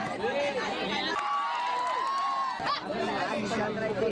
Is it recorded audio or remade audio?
recorded